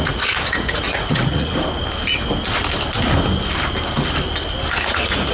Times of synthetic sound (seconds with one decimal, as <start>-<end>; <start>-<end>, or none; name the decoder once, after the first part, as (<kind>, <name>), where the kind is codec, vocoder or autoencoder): 0.0-1.5 (vocoder, Vocos); 4.7-5.3